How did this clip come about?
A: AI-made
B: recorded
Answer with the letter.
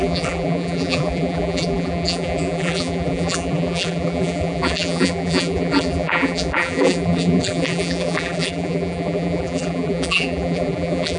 A